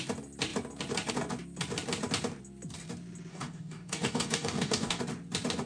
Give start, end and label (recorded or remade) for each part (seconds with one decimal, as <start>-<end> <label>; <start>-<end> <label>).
0.0-3.3 recorded; 3.3-5.0 remade; 5.0-5.7 recorded